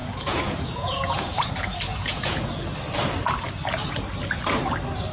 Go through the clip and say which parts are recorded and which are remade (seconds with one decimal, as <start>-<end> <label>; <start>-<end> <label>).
0.0-1.5 remade; 1.5-1.9 recorded; 1.9-2.5 remade; 2.5-5.1 recorded